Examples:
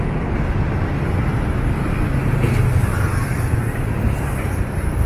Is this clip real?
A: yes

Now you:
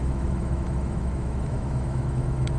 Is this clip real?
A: no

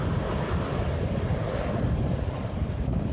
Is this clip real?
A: yes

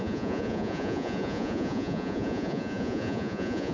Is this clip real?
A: no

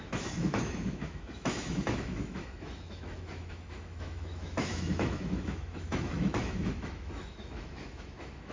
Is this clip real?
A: no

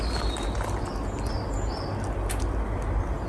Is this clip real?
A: yes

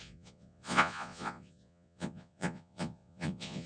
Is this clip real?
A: no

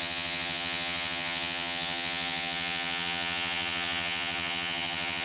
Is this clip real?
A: no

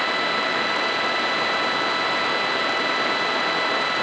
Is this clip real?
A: yes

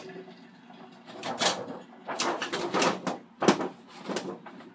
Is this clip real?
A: yes